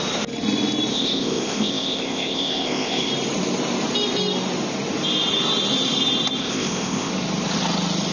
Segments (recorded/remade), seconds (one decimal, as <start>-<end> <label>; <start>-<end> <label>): 0.0-0.9 recorded; 0.9-3.1 remade; 3.1-6.4 recorded; 6.4-7.1 remade; 7.1-8.1 recorded